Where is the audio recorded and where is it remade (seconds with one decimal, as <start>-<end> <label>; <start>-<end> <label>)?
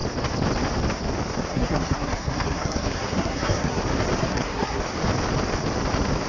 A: 0.0-1.5 recorded; 1.5-3.8 remade; 3.8-4.2 recorded; 4.2-4.8 remade; 4.8-6.3 recorded